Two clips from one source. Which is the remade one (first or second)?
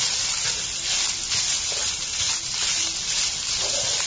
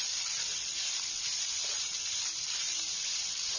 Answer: second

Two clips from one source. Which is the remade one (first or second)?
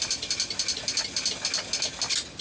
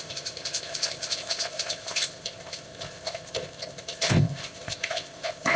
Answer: second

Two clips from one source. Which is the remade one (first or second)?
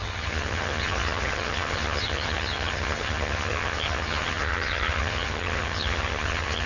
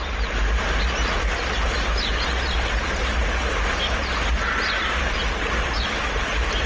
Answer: first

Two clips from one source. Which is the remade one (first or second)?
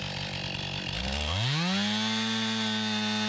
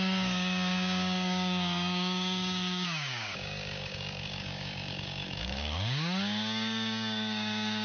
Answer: second